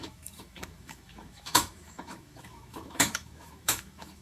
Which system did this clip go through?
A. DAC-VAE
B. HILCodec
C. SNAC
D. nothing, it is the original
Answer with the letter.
A